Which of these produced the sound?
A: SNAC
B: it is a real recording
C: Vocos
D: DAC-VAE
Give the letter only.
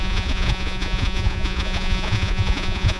C